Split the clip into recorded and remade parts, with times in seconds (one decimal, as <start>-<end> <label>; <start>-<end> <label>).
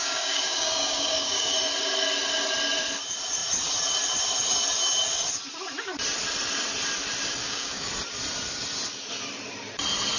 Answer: 0.0-1.5 remade; 1.5-7.4 recorded; 7.4-7.9 remade; 7.9-10.2 recorded